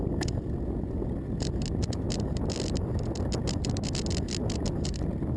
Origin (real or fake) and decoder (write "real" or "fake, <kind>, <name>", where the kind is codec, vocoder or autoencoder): real